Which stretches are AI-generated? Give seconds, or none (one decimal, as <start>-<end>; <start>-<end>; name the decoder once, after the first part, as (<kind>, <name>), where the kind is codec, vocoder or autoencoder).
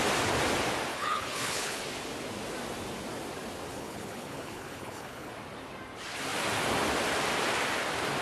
0.9-1.8 (codec, HILCodec); 3.7-5.3